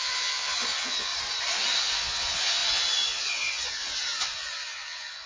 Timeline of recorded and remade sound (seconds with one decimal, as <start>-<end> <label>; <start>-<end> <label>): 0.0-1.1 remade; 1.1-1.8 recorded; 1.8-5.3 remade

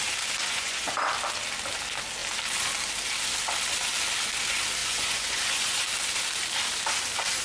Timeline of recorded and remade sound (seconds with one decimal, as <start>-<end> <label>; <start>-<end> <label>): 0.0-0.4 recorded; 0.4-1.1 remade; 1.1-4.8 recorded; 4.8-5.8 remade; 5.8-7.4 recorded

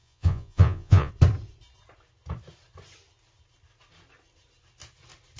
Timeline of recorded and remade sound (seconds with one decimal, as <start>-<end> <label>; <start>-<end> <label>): 0.0-1.1 remade; 1.1-5.4 recorded